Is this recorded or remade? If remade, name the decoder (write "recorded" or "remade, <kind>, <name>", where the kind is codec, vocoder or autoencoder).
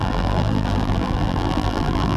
remade, vocoder, BigVGAN v2